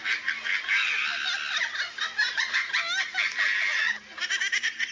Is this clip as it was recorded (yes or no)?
yes